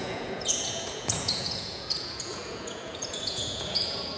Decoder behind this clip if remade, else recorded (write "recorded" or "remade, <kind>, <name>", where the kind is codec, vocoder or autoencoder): remade, vocoder, Vocos